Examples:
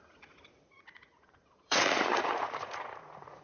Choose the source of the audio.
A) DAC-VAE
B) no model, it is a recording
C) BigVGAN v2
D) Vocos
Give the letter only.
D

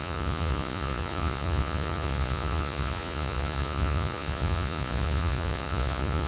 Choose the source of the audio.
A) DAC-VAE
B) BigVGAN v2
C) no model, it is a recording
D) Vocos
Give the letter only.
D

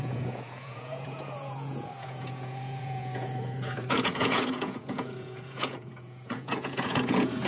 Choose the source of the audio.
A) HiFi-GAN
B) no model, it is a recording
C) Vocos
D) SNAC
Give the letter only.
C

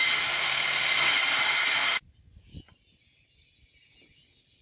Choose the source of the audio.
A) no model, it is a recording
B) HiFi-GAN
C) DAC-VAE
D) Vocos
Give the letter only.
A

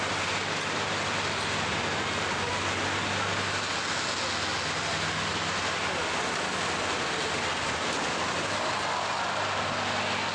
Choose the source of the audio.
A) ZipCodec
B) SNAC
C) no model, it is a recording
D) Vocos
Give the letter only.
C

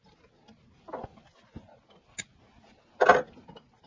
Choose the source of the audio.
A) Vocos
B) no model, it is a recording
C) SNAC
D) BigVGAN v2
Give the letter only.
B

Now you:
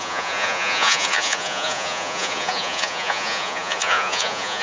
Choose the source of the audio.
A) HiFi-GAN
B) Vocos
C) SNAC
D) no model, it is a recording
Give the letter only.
B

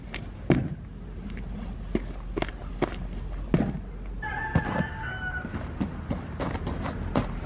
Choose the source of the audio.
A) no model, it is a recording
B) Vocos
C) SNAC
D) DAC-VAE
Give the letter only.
A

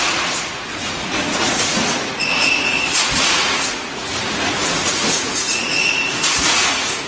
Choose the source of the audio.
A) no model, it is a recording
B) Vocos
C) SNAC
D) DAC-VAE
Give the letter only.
B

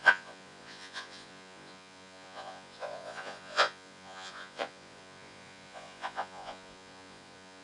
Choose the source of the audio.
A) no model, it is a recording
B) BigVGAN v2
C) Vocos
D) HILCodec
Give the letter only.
C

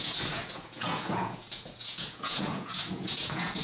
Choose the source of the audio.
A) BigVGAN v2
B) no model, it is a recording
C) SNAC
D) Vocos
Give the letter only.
D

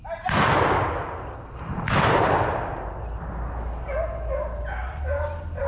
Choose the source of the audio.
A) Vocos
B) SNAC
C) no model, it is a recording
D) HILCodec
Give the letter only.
C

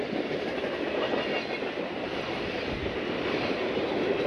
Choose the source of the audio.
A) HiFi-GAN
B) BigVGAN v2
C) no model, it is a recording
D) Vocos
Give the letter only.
C